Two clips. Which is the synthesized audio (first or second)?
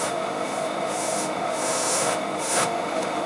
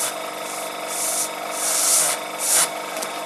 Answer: first